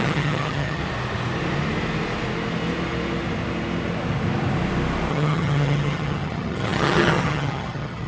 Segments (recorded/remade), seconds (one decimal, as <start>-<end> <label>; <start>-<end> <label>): 0.0-0.8 remade; 0.8-5.1 recorded; 5.1-8.1 remade